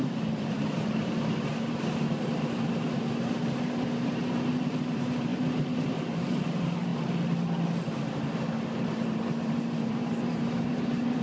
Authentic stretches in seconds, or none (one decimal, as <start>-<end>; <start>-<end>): 5.3-5.9; 6.9-8.8